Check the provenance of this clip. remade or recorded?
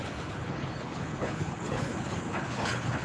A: remade